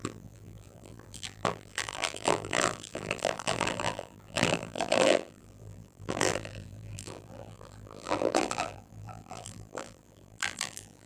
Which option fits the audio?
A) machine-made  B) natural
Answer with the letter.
A